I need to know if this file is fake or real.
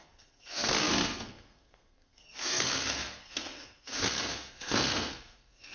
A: fake